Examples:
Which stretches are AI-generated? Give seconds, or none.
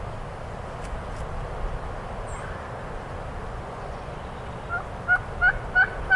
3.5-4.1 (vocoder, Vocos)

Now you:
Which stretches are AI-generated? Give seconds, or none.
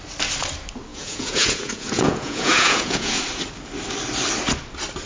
0.9-3.2 (vocoder, Vocos)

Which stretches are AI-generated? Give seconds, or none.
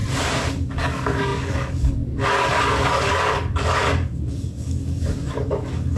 0.5-6.0 (codec, DAC)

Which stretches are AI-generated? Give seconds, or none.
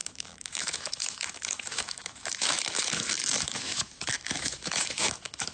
0.0-5.5 (autoencoder, DAC-VAE)